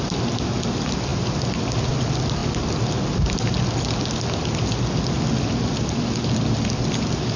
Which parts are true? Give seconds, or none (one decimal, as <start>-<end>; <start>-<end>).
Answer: 0.0-7.4